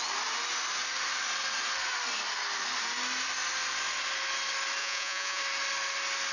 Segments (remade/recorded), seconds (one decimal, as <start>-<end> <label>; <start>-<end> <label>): 0.0-4.8 recorded; 4.8-5.4 remade; 5.4-6.3 recorded